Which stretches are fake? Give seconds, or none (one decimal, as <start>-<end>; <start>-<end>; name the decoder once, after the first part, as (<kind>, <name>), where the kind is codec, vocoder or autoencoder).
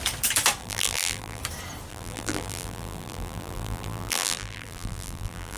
0.6-1.4 (vocoder, BigVGAN v2); 1.9-5.6